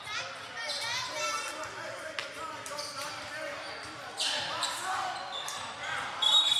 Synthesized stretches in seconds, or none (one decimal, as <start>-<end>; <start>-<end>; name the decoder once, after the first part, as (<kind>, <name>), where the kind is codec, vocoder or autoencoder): none